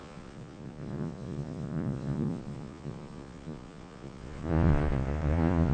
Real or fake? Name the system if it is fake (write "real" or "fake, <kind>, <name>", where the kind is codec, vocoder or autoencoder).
fake, vocoder, Vocos